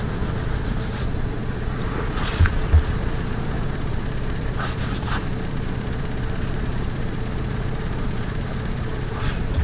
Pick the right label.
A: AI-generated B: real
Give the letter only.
A